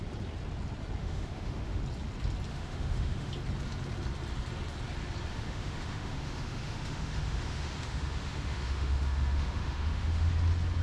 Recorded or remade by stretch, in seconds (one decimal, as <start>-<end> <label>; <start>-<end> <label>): 0.0-1.0 recorded; 1.0-1.8 remade; 1.8-2.5 recorded; 2.5-3.3 remade; 3.3-5.3 recorded; 5.3-10.3 remade; 10.3-10.8 recorded

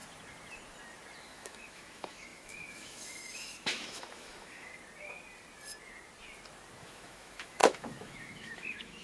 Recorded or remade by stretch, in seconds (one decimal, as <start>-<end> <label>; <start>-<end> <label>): 0.0-1.2 recorded; 1.2-4.7 remade; 4.7-6.8 recorded; 6.8-9.0 remade

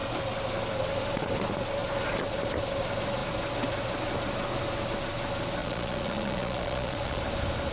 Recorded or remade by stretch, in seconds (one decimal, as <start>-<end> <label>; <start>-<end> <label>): 0.0-5.6 recorded; 5.6-7.2 remade; 7.2-7.7 recorded

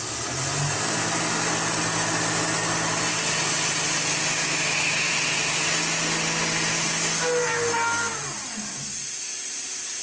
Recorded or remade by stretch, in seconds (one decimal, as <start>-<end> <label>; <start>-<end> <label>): 0.0-4.4 recorded; 4.4-5.1 remade; 5.1-10.0 recorded

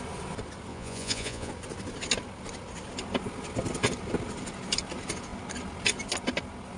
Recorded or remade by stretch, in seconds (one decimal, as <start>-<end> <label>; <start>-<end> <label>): 0.0-0.7 recorded; 0.7-1.5 remade; 1.5-6.8 recorded

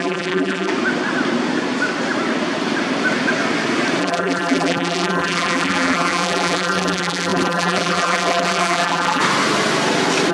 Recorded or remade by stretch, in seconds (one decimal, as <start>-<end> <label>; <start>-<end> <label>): 0.0-0.7 remade; 0.7-4.0 recorded; 4.0-9.2 remade; 9.2-10.3 recorded